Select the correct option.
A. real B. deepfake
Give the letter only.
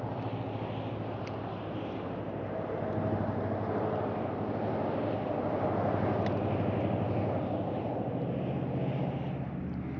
A